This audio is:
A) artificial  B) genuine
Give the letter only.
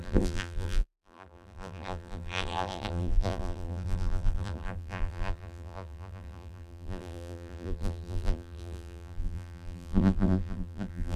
A